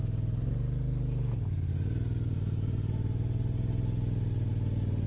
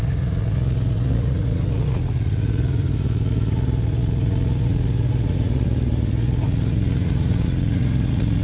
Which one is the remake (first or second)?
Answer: second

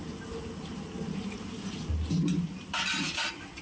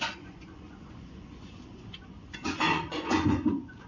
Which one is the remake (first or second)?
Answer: second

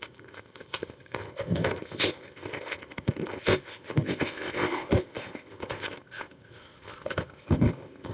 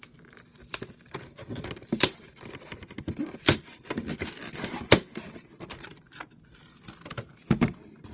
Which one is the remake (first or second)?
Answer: first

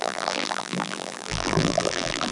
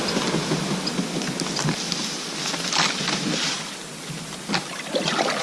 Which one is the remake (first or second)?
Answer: first